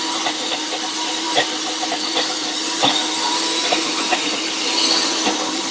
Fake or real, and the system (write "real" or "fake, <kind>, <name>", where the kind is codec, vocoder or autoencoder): fake, vocoder, BigVGAN v2